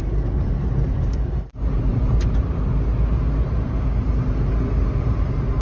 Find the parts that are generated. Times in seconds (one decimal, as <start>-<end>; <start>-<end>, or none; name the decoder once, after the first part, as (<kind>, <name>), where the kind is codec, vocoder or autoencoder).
0.0-5.6 (vocoder, BigVGAN v2)